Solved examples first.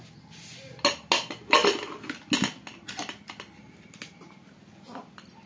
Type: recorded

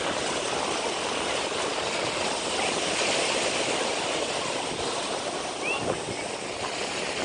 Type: recorded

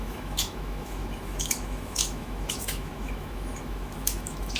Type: remade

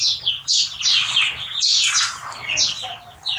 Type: recorded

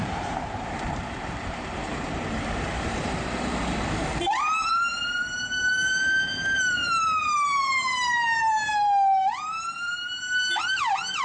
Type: remade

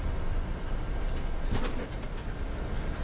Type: remade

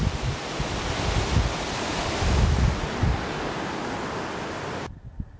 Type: recorded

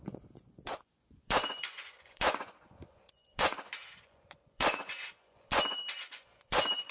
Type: remade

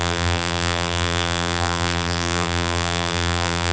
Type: remade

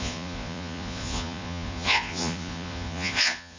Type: remade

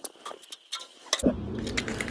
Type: recorded